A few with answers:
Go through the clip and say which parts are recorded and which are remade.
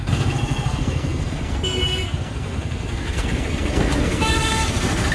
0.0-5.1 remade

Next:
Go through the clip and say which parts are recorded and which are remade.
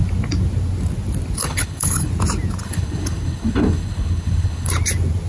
0.0-1.4 recorded; 1.4-2.1 remade; 2.1-2.6 recorded; 2.6-4.7 remade; 4.7-5.3 recorded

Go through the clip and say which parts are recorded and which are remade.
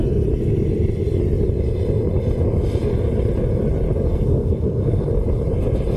0.0-4.1 recorded; 4.1-5.1 remade; 5.1-6.0 recorded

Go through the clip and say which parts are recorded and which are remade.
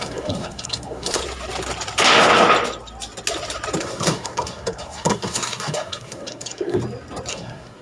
0.0-1.2 remade; 1.2-3.8 recorded; 3.8-6.8 remade; 6.8-7.3 recorded; 7.3-7.8 remade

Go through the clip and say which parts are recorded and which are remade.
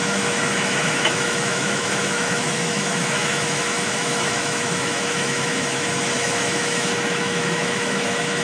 0.0-8.4 remade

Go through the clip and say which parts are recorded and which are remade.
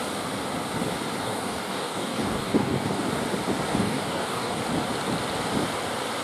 0.0-1.2 recorded; 1.2-3.1 remade; 3.1-3.7 recorded; 3.7-4.6 remade; 4.6-6.2 recorded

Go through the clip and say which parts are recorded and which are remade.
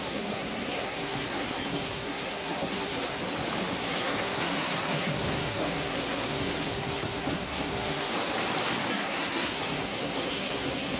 0.0-3.2 remade; 3.2-3.8 recorded; 3.8-8.1 remade; 8.1-8.9 recorded; 8.9-11.0 remade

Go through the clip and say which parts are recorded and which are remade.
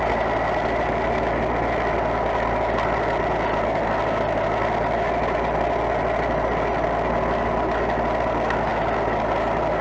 0.0-9.8 recorded